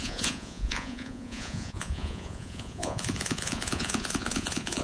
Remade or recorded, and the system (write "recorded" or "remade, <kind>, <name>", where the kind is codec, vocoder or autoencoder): remade, vocoder, Vocos